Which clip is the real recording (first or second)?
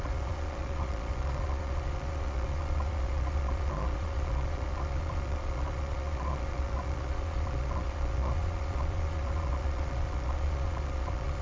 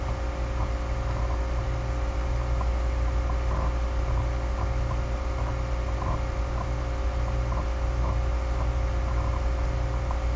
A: second